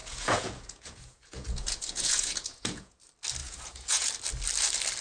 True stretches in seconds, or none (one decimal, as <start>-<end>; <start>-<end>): 3.0-3.4; 4.1-5.0